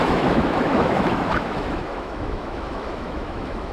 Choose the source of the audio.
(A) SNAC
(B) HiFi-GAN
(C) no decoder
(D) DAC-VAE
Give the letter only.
D